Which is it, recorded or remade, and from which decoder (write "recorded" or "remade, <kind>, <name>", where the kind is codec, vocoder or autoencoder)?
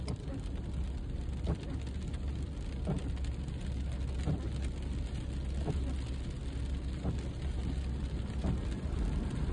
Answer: recorded